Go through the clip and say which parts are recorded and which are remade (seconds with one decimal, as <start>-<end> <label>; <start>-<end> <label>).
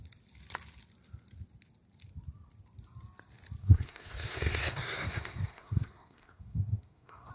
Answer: 0.0-3.6 recorded; 3.6-7.3 remade